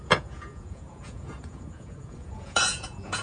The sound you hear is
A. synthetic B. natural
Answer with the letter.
A